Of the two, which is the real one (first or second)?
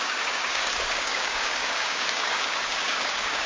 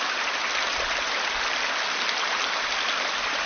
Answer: second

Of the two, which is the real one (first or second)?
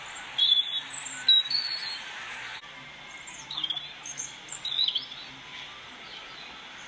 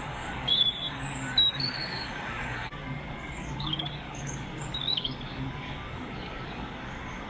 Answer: first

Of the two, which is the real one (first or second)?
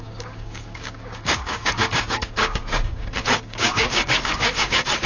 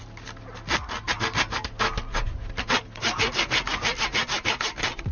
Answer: second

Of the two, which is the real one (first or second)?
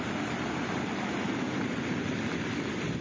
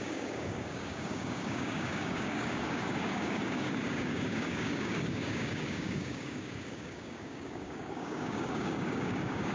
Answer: first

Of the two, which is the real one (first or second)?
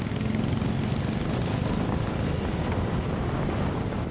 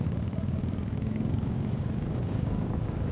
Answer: first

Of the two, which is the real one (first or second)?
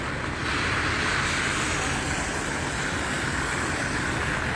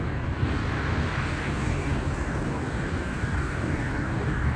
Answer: first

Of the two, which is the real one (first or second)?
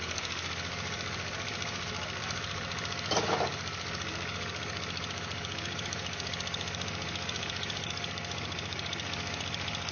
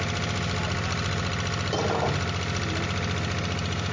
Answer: second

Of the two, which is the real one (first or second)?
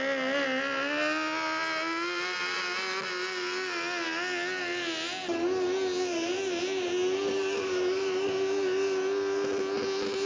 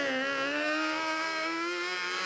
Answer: first